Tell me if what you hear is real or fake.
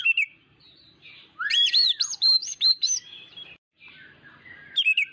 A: fake